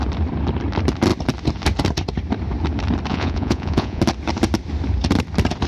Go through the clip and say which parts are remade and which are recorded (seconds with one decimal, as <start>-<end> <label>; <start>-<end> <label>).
0.0-3.1 recorded; 3.1-4.0 remade; 4.0-5.7 recorded